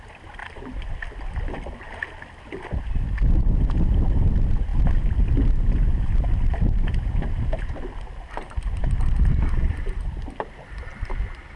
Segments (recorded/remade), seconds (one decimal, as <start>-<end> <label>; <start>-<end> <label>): 0.0-8.8 recorded; 8.8-11.0 remade; 11.0-11.6 recorded